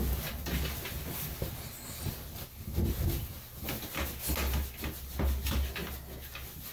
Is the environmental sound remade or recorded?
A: recorded